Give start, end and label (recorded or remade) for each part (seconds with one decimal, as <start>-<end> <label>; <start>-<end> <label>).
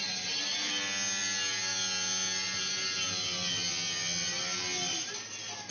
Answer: 0.0-5.7 recorded